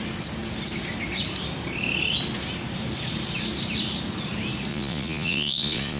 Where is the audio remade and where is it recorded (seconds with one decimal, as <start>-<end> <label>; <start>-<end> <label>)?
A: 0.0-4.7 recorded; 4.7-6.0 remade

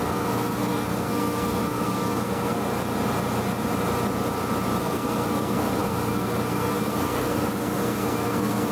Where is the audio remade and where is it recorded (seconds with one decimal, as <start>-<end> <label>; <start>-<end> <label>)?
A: 0.0-2.6 remade; 2.6-4.8 recorded; 4.8-8.7 remade

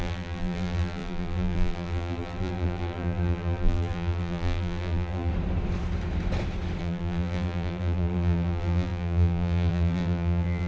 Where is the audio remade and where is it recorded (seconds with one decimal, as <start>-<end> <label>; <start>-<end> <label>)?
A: 0.0-5.3 remade; 5.3-6.8 recorded; 6.8-10.7 remade